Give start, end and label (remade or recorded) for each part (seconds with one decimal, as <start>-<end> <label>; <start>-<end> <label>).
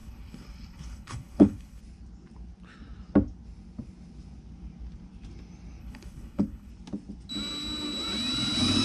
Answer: 0.0-1.8 remade; 1.8-5.8 recorded; 5.8-6.7 remade; 6.7-8.8 recorded